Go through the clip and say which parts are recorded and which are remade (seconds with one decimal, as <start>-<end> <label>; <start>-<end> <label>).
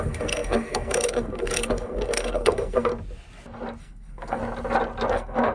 0.0-2.9 remade; 2.9-3.8 recorded; 3.8-4.4 remade; 4.4-5.1 recorded; 5.1-5.5 remade